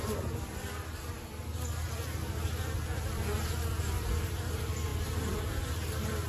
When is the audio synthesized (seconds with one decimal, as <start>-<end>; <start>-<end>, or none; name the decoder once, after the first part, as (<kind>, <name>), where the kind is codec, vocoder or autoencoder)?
0.0-1.5 (vocoder, BigVGAN v2); 3.7-4.9; 5.8-6.3